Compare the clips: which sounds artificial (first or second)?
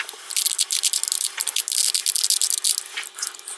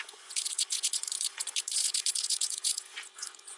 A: second